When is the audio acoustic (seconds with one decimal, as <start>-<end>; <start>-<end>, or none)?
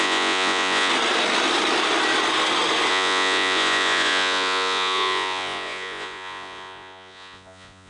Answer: 0.9-2.9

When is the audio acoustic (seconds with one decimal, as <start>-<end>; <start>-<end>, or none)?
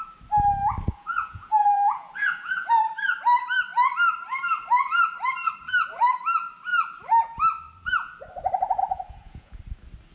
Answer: 0.0-0.9; 2.8-8.8; 9.6-10.1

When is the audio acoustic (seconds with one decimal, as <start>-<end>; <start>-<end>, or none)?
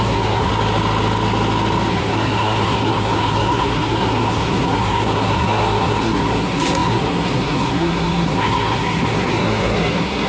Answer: 0.5-1.9